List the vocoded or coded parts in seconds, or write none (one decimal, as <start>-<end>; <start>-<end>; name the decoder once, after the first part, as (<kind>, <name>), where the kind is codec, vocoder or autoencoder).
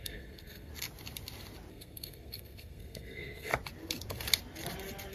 0.0-0.7 (codec, SNAC); 1.7-3.5